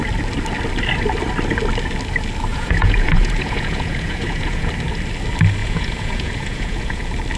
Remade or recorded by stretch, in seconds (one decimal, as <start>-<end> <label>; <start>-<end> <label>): 0.0-2.5 recorded; 2.5-4.7 remade; 4.7-5.6 recorded; 5.6-7.0 remade; 7.0-7.4 recorded